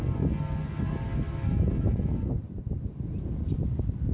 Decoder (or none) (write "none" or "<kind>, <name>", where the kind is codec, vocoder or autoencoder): none